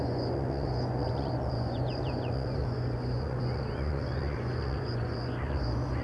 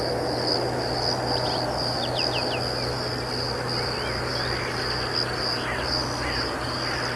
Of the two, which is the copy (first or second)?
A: first